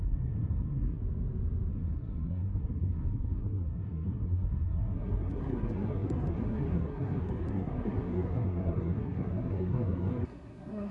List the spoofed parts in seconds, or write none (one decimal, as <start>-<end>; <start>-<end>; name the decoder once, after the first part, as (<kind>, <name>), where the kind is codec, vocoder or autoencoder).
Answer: 0.0-1.0 (codec, SNAC); 1.7-10.9